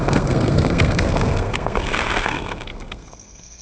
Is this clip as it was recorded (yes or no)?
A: no